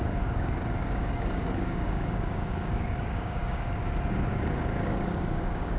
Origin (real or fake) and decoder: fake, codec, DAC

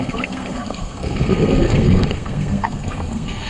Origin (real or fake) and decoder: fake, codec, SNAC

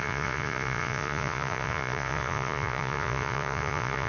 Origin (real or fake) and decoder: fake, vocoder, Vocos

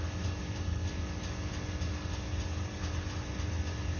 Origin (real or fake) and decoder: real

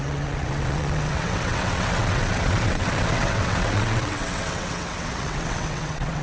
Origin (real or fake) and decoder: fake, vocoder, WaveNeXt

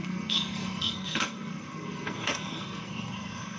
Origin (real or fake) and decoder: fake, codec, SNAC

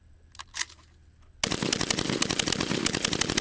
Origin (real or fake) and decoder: real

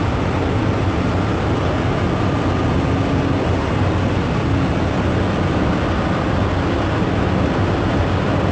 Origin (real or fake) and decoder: real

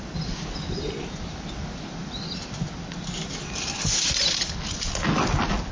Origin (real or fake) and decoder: real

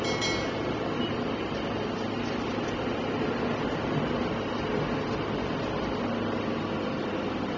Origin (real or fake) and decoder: real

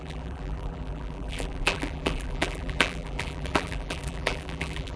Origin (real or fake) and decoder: fake, vocoder, BigVGAN v2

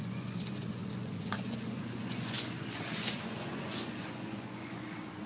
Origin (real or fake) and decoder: fake, vocoder, Vocos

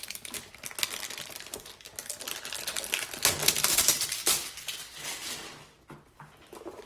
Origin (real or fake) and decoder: real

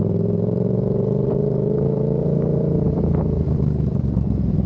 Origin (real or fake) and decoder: fake, vocoder, BigVGAN v2